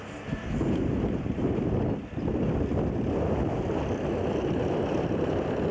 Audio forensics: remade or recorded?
recorded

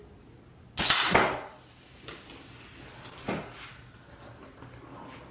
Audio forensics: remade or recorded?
recorded